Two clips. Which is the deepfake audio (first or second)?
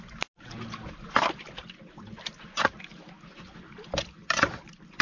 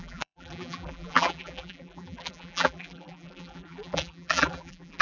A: second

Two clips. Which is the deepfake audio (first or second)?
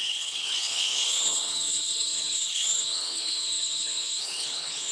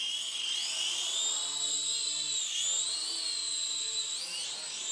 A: first